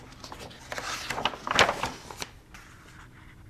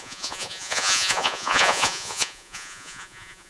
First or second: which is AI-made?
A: second